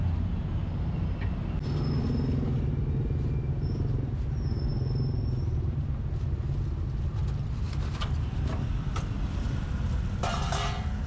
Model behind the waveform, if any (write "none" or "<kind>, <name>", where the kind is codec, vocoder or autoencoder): none